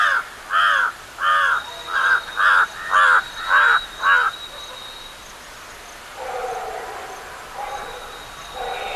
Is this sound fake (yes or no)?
no